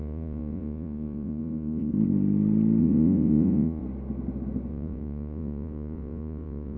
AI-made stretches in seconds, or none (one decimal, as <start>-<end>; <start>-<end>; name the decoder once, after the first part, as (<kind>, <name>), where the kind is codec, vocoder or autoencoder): 0.0-1.9 (vocoder, Vocos); 2.8-3.8; 4.7-6.8